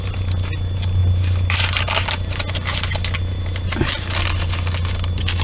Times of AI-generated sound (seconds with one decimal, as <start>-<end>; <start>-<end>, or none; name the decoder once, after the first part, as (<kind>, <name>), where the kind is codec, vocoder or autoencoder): 1.0-3.9 (vocoder, BigVGAN v2)